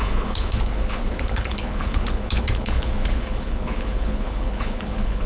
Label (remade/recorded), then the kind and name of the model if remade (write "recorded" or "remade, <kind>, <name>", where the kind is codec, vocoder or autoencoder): remade, codec, HILCodec